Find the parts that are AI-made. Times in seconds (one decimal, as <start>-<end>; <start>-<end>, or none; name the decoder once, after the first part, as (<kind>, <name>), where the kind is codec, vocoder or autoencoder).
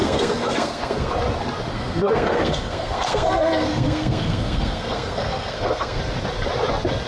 0.0-1.1 (codec, SNAC); 1.7-6.0